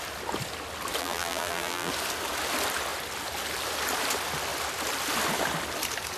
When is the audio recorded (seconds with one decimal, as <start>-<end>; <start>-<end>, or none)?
0.0-1.0; 1.9-6.2